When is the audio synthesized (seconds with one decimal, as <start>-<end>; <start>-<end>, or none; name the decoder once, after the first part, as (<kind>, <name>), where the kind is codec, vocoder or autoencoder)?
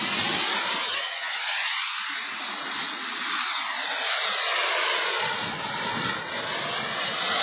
0.8-1.4 (vocoder, HiFi-GAN)